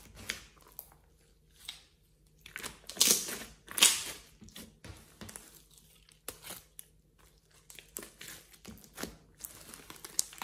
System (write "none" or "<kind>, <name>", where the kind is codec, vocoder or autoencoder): none